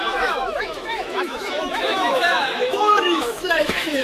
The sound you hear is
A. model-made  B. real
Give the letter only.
A